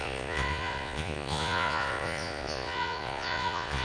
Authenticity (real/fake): fake